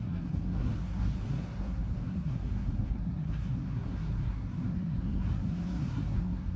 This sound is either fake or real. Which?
fake